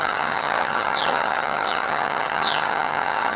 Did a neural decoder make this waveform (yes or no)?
yes